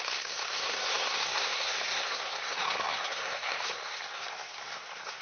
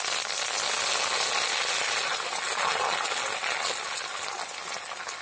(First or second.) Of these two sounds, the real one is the second